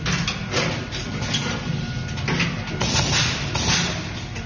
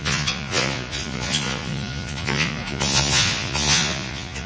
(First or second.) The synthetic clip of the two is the second